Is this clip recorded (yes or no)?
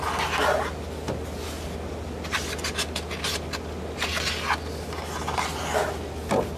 yes